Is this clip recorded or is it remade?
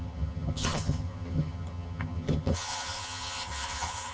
remade